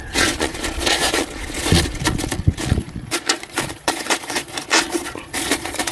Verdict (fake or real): fake